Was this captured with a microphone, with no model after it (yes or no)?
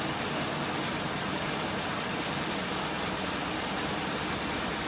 yes